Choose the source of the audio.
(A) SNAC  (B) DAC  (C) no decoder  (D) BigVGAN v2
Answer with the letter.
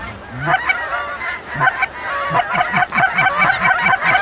D